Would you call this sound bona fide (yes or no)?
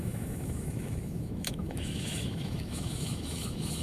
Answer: no